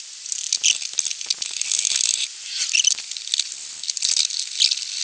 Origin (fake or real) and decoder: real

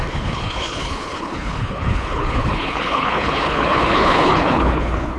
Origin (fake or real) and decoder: fake, codec, HILCodec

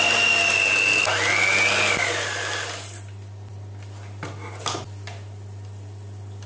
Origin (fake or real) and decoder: real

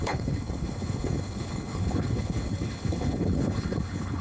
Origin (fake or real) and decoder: fake, codec, HILCodec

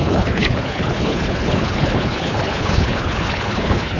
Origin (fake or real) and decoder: fake, codec, HILCodec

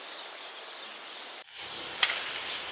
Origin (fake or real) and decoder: real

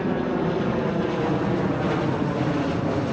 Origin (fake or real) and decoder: real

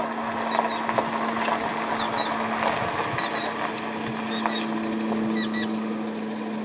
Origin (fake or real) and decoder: real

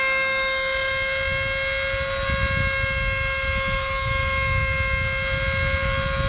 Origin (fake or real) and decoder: real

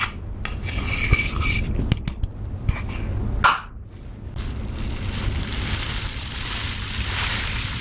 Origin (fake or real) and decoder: real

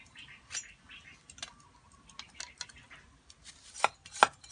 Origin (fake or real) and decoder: real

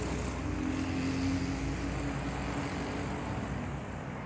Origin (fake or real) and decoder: real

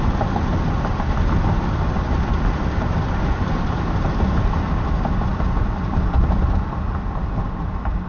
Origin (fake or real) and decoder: real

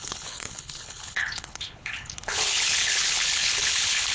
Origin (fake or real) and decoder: fake, codec, HILCodec